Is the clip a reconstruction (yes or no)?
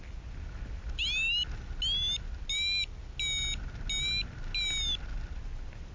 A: no